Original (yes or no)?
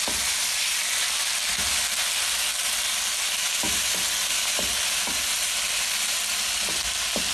yes